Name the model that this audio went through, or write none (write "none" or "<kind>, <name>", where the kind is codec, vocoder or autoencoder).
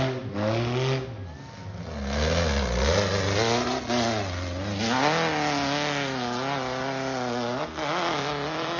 none